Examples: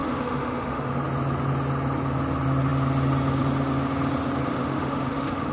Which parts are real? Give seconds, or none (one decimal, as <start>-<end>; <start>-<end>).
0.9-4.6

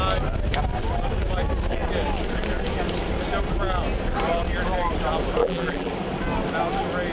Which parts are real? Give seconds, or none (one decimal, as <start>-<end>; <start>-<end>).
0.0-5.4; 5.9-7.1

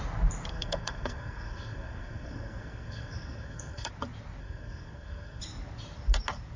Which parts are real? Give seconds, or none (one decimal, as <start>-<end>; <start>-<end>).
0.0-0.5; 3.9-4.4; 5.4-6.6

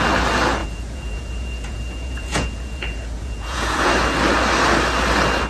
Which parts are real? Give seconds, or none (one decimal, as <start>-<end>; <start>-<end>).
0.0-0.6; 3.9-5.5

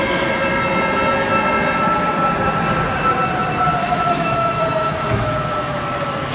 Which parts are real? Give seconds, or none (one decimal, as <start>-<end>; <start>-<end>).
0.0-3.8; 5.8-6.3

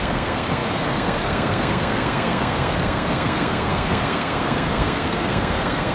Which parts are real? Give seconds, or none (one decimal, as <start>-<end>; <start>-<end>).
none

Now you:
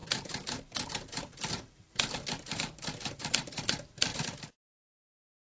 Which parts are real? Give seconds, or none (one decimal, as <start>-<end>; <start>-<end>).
4.1-5.4